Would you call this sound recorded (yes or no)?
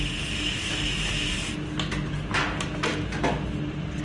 yes